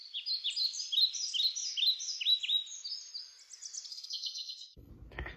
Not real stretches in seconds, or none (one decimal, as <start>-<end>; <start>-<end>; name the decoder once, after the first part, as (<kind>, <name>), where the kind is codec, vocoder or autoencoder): 3.9-4.9 (codec, SNAC)